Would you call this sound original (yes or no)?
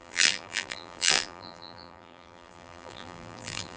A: no